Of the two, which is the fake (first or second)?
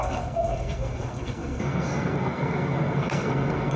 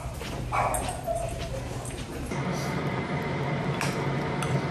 first